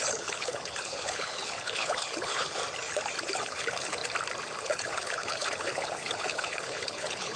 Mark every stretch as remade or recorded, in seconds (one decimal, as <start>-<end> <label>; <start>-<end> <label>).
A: 0.0-2.6 remade; 2.6-3.2 recorded; 3.2-4.0 remade; 4.0-4.6 recorded; 4.6-7.4 remade